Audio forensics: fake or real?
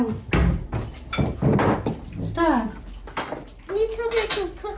real